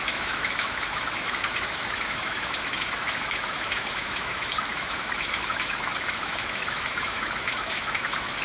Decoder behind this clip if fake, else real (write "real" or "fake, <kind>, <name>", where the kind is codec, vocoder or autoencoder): fake, autoencoder, DAC-VAE